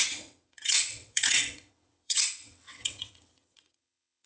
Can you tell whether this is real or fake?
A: fake